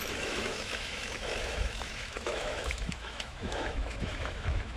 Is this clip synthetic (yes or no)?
yes